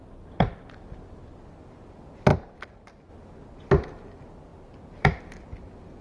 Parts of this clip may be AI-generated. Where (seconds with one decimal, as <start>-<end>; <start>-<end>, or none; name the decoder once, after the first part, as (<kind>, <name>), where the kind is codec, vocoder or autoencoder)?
2.3-3.1 (vocoder, BigVGAN v2); 4.5-5.2